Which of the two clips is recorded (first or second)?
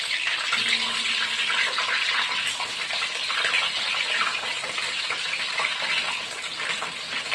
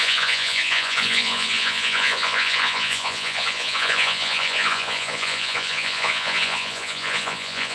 first